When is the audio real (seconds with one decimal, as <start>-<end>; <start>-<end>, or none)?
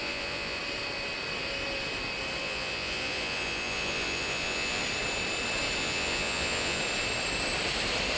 0.6-2.4; 4.8-5.8; 6.8-8.2